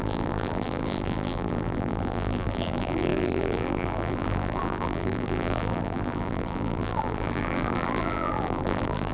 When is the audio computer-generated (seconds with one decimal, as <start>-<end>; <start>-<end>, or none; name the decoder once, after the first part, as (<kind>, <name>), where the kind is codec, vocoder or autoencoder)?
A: 0.0-9.1 (vocoder, BigVGAN v2)

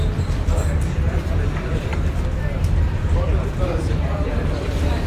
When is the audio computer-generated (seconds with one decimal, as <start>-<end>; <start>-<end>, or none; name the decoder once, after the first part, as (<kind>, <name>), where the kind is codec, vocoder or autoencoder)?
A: 0.0-5.1 (vocoder, BigVGAN v2)

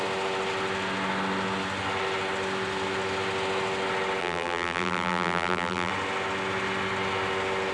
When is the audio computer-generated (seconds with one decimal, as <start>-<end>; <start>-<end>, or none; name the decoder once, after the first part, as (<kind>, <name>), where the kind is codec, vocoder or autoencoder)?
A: 4.2-5.9 (vocoder, BigVGAN v2)